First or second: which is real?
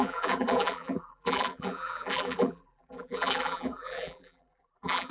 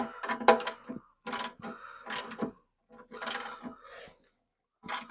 second